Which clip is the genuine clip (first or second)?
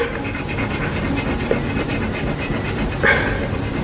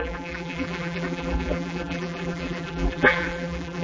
first